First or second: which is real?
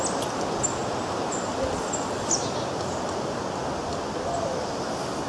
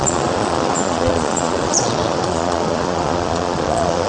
first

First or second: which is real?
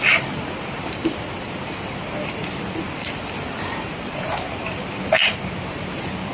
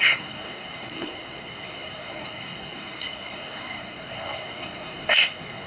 first